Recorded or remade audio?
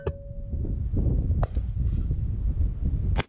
recorded